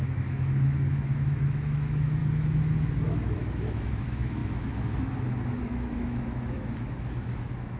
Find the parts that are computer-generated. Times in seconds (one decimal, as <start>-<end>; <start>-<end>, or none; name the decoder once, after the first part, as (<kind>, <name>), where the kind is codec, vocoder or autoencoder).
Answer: 0.0-7.8 (autoencoder, DAC-VAE)